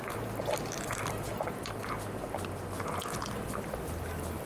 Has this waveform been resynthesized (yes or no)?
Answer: no